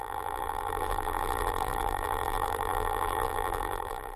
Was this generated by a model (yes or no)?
yes